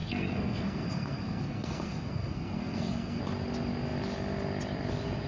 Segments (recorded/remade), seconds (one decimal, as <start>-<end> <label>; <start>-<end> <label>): 0.0-3.2 remade; 3.2-5.3 recorded